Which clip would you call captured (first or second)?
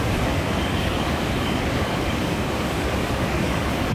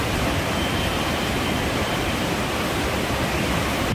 second